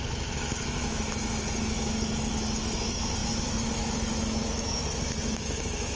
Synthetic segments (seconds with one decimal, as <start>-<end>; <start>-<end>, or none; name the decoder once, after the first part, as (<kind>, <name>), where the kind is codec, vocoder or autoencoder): 0.0-6.0 (autoencoder, DAC-VAE)